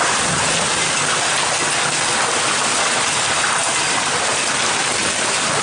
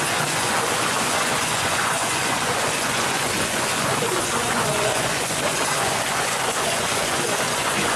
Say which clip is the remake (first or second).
second